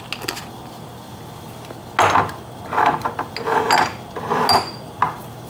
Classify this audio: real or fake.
real